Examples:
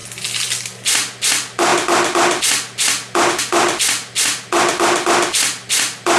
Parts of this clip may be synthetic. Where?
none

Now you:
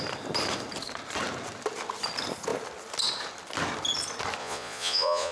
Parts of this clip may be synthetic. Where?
4.4-5.3 (vocoder, Vocos)

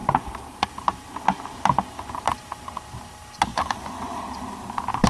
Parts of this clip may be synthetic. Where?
3.5-4.2 (vocoder, Vocos)

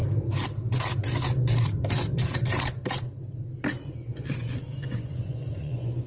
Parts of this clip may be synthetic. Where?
3.7-6.1 (vocoder, Vocos)

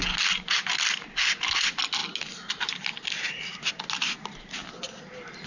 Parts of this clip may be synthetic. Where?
none

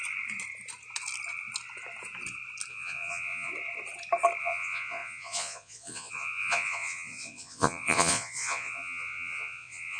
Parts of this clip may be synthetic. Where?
2.7-3.5 (vocoder, Vocos); 4.4-10.0